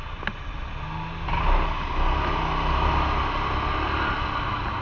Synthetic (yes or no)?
no